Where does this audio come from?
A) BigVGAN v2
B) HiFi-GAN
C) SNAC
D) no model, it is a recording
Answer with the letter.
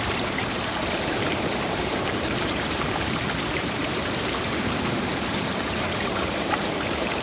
A